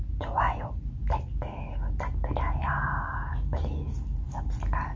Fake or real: real